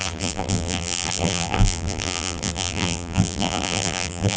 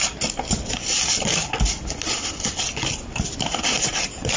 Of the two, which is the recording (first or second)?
second